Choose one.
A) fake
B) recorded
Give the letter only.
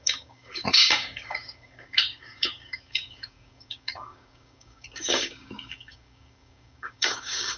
A